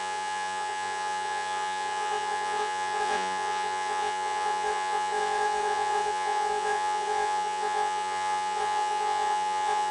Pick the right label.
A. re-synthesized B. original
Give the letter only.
A